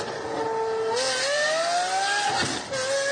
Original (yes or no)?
yes